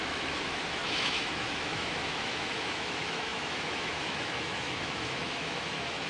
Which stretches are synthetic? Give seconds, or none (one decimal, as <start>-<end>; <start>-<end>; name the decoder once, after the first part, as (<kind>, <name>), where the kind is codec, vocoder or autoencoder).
0.0-6.1 (autoencoder, DAC-VAE)